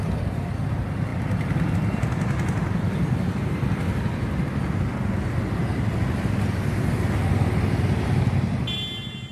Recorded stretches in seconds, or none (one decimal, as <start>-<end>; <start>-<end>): 0.0-9.3